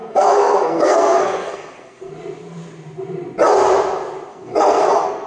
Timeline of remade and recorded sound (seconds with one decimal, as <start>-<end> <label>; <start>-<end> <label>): 0.0-2.1 remade; 2.1-4.3 recorded; 4.3-5.3 remade